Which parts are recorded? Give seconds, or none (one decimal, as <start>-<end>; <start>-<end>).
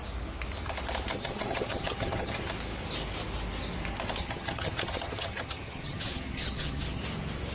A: 0.0-1.1; 2.4-4.2; 7.0-7.5